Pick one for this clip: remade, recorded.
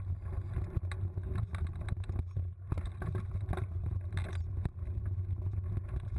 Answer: recorded